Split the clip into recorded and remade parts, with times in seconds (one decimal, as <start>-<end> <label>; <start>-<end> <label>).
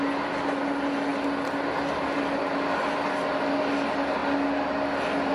0.0-5.3 recorded